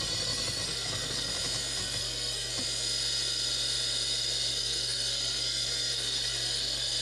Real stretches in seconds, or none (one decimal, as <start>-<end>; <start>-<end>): 1.3-1.8; 2.5-4.5